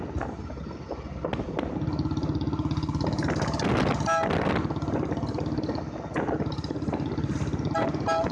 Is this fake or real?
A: real